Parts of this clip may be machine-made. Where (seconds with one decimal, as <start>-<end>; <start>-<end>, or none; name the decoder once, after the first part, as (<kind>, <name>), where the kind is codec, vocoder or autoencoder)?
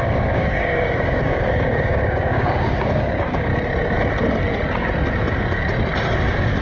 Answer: 0.0-3.5 (codec, DAC)